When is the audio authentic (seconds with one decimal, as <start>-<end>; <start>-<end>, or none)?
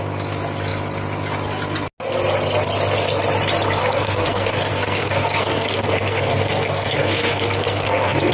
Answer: 0.0-3.8